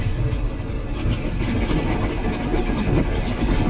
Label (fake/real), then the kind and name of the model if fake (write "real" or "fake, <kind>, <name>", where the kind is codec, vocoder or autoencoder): real